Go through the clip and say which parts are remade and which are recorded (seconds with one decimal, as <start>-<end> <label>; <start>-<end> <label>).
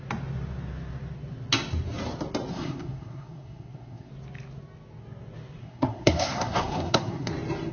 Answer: 0.0-2.5 recorded; 2.5-4.1 remade; 4.1-5.6 recorded; 5.6-7.3 remade; 7.3-7.7 recorded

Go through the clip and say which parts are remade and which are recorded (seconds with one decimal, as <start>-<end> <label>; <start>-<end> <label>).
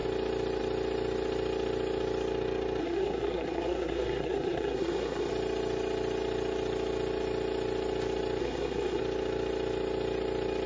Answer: 0.0-2.8 recorded; 2.8-5.3 remade; 5.3-8.4 recorded; 8.4-9.0 remade; 9.0-10.7 recorded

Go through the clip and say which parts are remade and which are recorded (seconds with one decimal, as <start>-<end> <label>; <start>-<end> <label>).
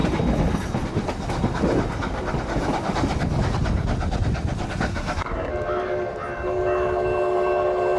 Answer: 0.0-4.9 recorded; 4.9-5.5 remade; 5.5-8.0 recorded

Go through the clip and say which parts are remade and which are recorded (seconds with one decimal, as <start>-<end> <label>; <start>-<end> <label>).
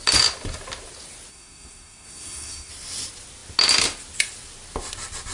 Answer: 0.0-1.3 recorded; 1.3-2.7 remade; 2.7-5.3 recorded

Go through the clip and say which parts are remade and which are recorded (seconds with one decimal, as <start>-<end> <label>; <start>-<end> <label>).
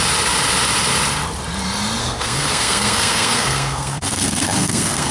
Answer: 0.0-2.0 recorded; 2.0-5.1 remade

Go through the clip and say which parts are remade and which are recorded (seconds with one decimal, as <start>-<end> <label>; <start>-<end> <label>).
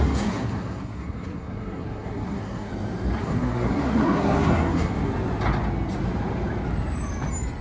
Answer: 0.0-2.7 remade; 2.7-3.2 recorded; 3.2-5.1 remade; 5.1-7.6 recorded